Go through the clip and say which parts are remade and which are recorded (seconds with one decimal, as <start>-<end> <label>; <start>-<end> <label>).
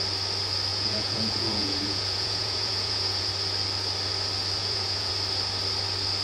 0.0-0.7 recorded; 0.7-3.3 remade; 3.3-4.6 recorded; 4.6-5.1 remade; 5.1-6.2 recorded